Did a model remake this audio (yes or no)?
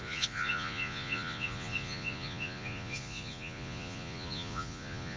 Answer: yes